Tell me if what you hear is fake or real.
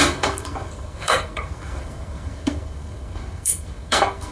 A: fake